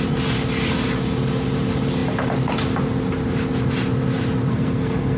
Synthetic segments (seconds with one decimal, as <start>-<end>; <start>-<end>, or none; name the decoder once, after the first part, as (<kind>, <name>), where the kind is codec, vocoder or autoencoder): 4.5-5.2 (codec, SNAC)